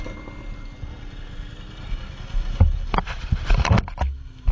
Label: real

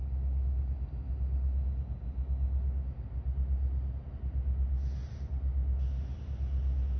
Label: real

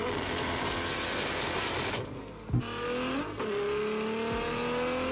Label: real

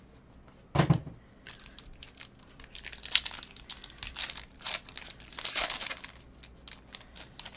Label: real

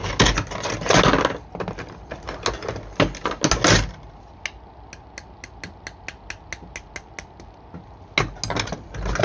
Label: real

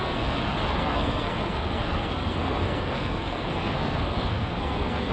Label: fake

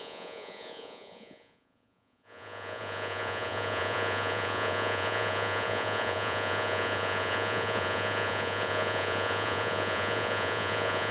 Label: fake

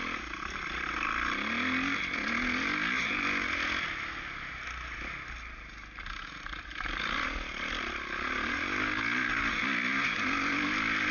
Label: real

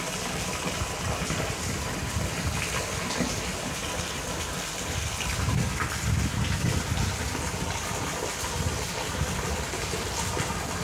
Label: real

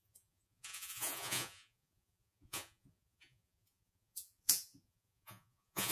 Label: fake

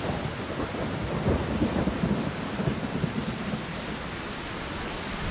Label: real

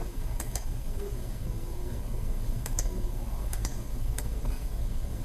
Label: fake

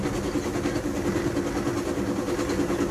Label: real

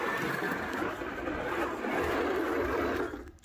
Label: real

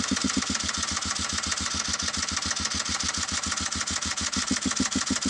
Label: real